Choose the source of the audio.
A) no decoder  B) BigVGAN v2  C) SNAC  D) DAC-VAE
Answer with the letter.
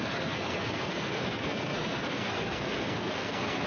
C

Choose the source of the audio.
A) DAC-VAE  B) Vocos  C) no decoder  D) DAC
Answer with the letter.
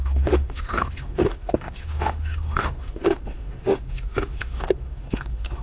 A